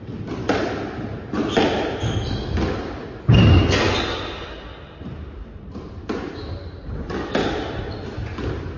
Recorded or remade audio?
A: recorded